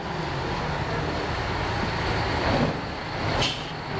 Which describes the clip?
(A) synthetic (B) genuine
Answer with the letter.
B